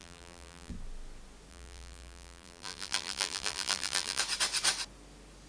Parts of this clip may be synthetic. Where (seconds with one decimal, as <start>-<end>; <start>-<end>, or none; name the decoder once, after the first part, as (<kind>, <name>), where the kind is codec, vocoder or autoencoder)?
0.0-0.7 (vocoder, BigVGAN v2); 1.5-4.2